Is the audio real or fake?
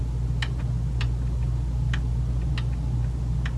real